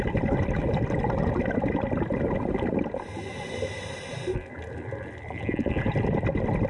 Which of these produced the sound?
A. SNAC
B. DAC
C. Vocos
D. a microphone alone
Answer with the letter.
D